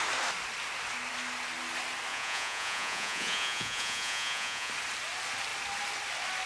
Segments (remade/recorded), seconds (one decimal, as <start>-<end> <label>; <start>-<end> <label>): 0.0-2.1 recorded; 2.1-4.7 remade; 4.7-6.5 recorded